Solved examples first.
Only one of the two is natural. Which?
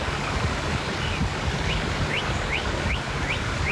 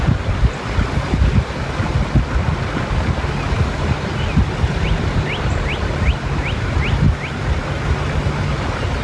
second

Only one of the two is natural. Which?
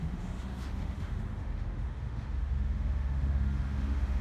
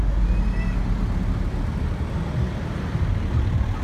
second